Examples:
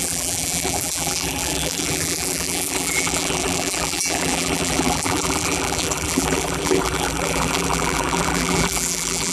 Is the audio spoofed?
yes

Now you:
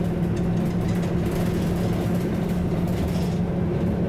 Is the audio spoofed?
no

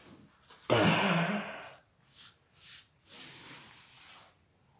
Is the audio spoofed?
no